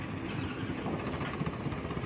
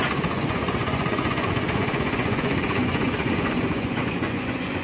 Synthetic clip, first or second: second